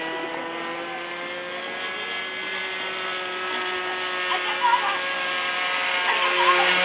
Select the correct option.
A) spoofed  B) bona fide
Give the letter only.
B